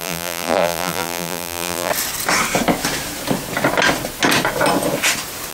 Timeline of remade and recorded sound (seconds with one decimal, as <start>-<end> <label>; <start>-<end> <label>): 0.0-1.9 remade; 1.9-5.5 recorded